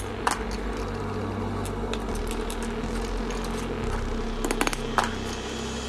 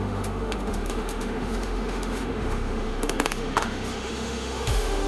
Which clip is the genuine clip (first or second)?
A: first